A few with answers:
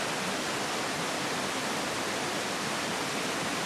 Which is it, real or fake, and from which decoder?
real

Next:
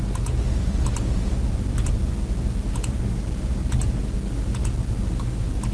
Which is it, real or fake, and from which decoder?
real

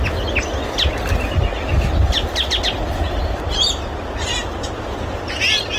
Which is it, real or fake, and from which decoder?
real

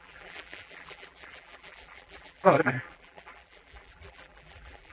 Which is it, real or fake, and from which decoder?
fake, vocoder, BigVGAN v2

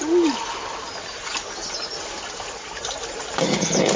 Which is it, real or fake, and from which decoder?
real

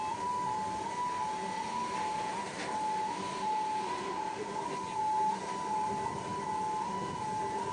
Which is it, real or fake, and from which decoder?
real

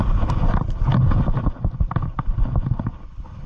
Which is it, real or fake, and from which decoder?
real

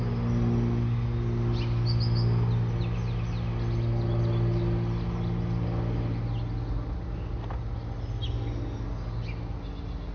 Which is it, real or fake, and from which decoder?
real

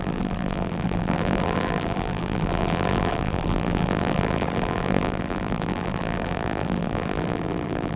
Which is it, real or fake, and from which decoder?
fake, vocoder, BigVGAN v2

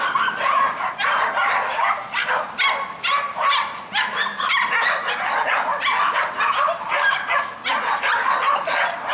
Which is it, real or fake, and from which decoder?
real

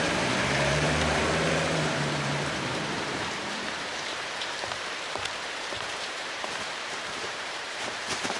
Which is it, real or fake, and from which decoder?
fake, vocoder, BigVGAN v2